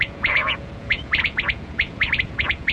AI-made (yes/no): yes